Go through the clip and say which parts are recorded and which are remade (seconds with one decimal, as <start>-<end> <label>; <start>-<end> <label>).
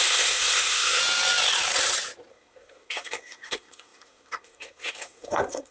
0.0-1.0 remade; 1.0-2.3 recorded; 2.3-5.7 remade